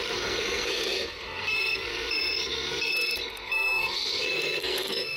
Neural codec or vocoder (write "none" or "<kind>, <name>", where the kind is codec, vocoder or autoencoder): codec, SNAC